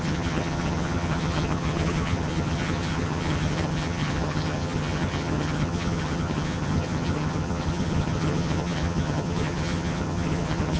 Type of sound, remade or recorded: remade